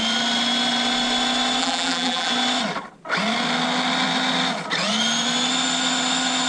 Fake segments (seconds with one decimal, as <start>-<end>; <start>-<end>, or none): 1.6-2.3